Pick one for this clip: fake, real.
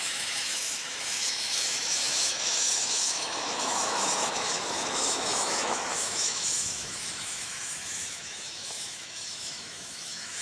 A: fake